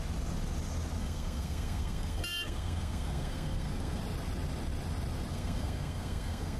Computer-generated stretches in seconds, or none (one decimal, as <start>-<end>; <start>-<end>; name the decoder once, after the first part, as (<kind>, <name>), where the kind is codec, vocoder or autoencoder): 1.0-4.0 (codec, SNAC); 5.3-6.6